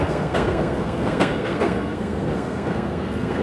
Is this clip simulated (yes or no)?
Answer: yes